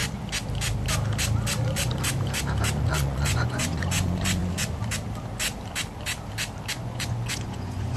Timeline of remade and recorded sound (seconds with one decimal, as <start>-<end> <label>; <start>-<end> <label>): 0.0-2.8 recorded; 2.8-4.4 remade; 4.4-6.7 recorded; 6.7-8.0 remade